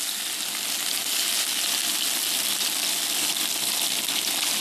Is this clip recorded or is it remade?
recorded